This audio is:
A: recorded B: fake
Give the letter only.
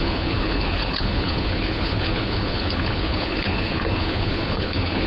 B